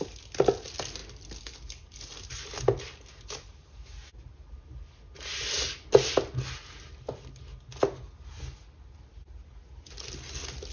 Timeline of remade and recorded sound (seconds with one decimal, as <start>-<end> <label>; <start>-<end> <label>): 0.0-10.7 recorded